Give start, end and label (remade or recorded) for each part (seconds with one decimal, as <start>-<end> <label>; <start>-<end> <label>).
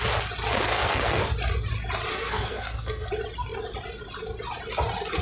0.0-0.7 recorded; 0.7-1.3 remade; 1.3-2.1 recorded; 2.1-3.1 remade; 3.1-5.2 recorded